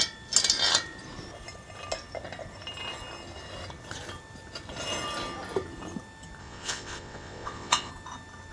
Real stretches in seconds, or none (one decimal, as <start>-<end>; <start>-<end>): 0.0-6.4; 7.9-8.5